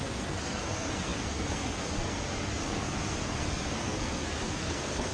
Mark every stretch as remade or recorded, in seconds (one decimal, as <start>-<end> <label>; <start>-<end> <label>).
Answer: 0.0-5.1 remade